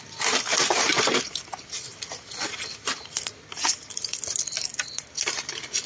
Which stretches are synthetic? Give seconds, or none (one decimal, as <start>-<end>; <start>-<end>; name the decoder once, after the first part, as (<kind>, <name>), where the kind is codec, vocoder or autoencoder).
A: none